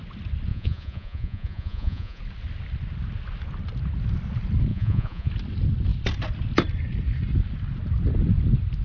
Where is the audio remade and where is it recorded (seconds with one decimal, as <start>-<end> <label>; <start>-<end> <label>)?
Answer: 0.0-0.5 recorded; 0.5-2.2 remade; 2.2-4.7 recorded; 4.7-5.3 remade; 5.3-8.8 recorded